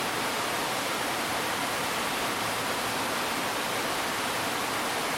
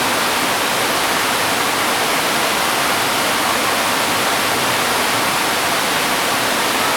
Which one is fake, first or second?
first